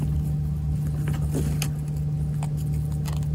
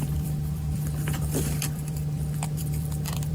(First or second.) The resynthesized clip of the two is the second